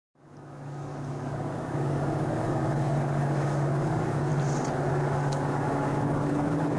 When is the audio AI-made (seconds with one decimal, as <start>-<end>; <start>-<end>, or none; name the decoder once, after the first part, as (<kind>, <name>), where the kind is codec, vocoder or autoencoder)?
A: 0.0-4.3 (codec, DAC); 4.9-6.8